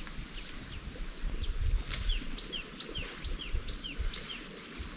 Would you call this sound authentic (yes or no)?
yes